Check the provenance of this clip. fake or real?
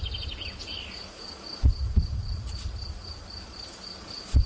real